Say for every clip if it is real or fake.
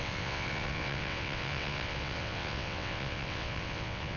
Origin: fake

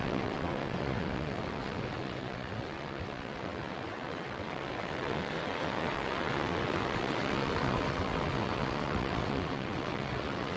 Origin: fake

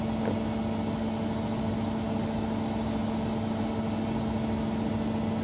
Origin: real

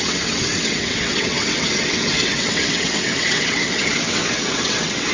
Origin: fake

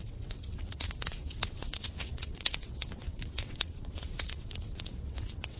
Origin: fake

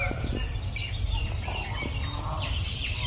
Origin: real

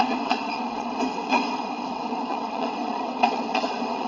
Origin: fake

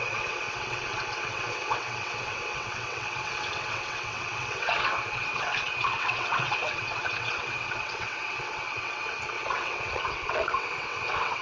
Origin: fake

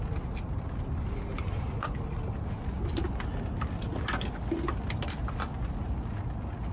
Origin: real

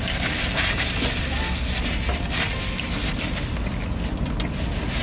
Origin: real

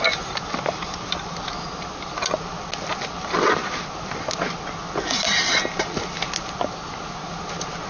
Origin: real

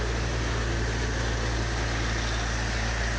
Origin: real